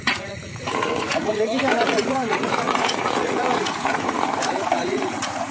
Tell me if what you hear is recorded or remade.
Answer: remade